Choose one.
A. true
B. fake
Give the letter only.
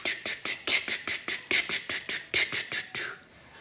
A